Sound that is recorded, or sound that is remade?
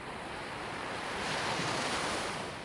remade